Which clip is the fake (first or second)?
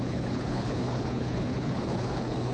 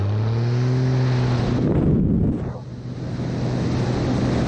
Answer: first